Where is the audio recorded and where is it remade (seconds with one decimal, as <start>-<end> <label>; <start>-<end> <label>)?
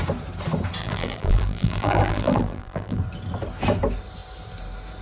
0.0-0.8 recorded; 0.8-3.0 remade; 3.0-5.0 recorded